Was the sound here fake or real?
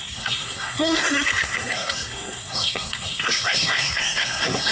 fake